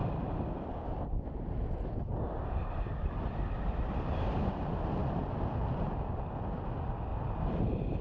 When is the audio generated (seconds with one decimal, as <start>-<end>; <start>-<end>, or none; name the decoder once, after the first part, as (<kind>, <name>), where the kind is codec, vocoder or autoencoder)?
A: 0.0-2.7 (vocoder, BigVGAN v2); 7.1-7.6